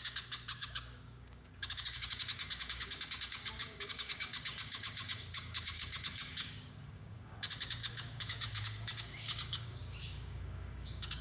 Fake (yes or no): yes